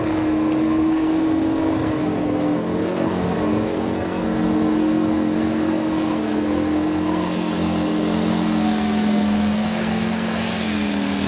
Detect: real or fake fake